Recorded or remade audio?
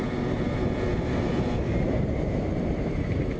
remade